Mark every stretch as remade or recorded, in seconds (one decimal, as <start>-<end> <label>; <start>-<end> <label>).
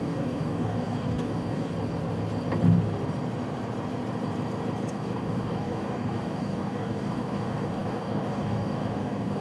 0.0-1.7 remade; 1.7-4.9 recorded; 4.9-9.4 remade